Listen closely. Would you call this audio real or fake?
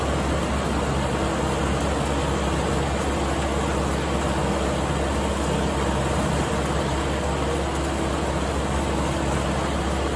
real